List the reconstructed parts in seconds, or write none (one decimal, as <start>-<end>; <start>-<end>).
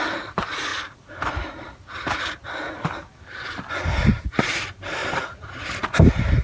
5.0-5.5